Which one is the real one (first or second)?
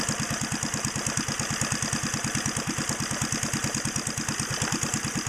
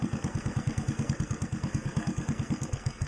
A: first